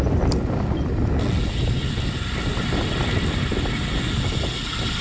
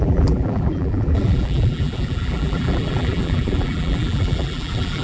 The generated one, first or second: second